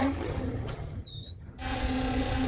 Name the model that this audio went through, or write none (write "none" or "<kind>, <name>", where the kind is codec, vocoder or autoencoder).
vocoder, HiFi-GAN